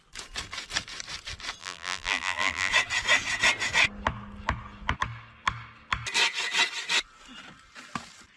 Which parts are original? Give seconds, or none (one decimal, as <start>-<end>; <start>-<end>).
0.0-1.6; 2.7-8.4